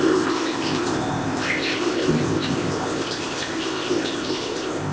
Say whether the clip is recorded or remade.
remade